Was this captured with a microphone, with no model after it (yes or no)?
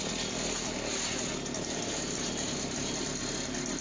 yes